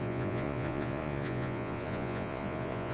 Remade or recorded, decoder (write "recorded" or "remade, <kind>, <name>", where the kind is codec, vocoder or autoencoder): remade, vocoder, Vocos